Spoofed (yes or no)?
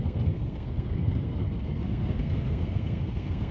yes